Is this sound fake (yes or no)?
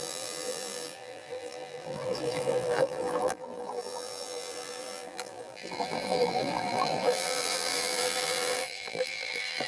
yes